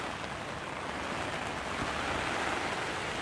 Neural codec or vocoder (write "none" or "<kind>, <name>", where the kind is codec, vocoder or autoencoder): none